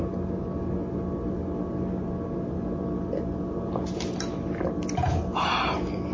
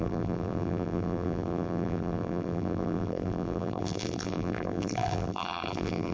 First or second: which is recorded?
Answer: first